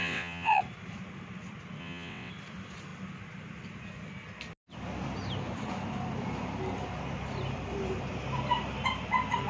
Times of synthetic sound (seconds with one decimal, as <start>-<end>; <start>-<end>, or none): 0.0-0.6; 1.8-2.3